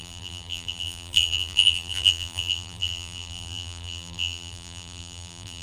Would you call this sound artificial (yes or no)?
yes